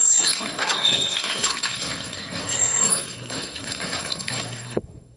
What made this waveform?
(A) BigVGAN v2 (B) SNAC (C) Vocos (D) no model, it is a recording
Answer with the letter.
B